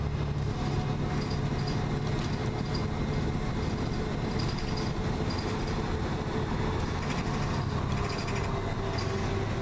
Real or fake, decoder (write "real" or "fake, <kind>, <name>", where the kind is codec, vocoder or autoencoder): real